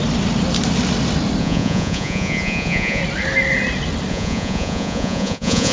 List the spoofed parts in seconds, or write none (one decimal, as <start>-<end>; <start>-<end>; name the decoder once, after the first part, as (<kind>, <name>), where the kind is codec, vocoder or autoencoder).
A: 1.4-3.0 (vocoder, Vocos); 4.1-5.7